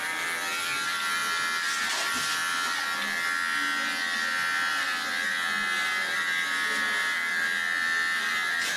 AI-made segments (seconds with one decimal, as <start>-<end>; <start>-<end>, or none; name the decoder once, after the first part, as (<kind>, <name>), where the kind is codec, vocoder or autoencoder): none